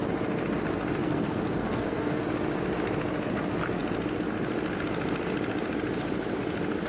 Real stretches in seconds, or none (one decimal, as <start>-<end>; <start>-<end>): 0.0-1.0; 2.2-6.9